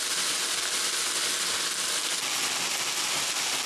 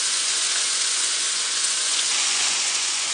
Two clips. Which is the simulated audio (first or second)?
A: second